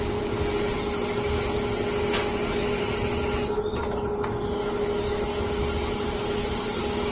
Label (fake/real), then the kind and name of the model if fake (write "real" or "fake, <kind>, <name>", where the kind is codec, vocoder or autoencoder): real